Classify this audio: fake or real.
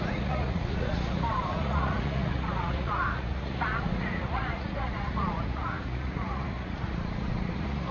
fake